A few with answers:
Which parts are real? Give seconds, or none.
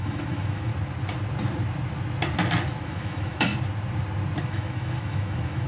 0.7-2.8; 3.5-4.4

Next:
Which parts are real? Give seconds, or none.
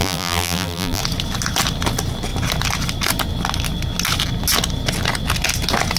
1.0-6.0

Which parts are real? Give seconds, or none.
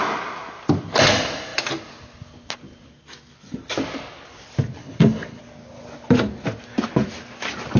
0.0-4.8; 5.4-7.8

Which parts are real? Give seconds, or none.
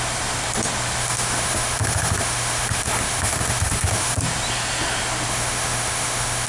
0.0-1.0; 4.2-5.3